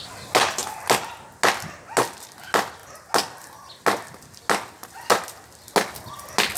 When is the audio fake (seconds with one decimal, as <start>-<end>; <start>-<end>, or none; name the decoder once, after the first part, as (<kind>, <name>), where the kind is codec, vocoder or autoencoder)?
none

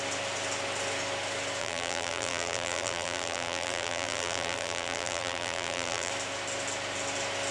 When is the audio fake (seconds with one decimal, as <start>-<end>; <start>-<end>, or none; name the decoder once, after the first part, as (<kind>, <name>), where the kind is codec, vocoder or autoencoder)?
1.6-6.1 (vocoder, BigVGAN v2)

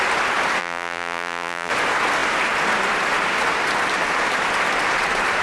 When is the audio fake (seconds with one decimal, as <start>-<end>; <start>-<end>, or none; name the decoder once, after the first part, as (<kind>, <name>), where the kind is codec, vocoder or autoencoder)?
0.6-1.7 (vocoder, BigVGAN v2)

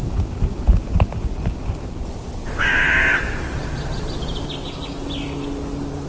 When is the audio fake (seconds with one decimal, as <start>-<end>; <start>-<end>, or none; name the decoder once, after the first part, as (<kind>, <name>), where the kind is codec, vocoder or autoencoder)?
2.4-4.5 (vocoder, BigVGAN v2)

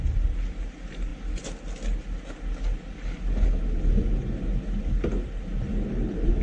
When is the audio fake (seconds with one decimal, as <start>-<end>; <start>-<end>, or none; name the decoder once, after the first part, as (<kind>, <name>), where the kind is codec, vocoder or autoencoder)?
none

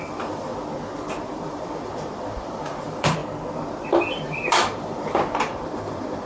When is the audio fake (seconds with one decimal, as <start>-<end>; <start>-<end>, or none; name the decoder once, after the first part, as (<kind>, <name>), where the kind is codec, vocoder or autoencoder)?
0.0-0.5 (vocoder, BigVGAN v2); 1.1-3.2; 3.9-6.3

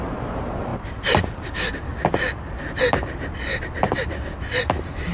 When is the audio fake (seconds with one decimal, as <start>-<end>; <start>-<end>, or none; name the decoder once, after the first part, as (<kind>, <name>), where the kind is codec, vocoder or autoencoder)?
0.0-1.9 (vocoder, BigVGAN v2); 4.0-5.1

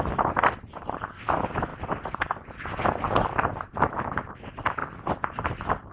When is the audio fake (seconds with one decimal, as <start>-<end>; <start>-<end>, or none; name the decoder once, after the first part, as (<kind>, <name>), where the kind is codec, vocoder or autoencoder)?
1.7-3.0 (vocoder, BigVGAN v2); 4.8-5.9